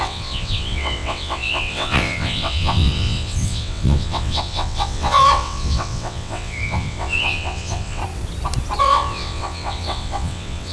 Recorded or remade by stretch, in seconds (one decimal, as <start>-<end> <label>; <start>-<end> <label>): 0.0-8.0 remade; 8.0-8.8 recorded; 8.8-10.7 remade